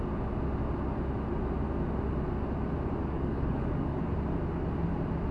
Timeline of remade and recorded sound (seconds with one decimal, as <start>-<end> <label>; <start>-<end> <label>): 0.0-3.0 recorded; 3.0-4.0 remade; 4.0-5.3 recorded